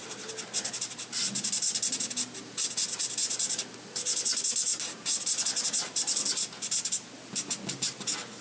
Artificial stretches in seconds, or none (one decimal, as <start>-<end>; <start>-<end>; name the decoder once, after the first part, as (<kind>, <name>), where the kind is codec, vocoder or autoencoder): none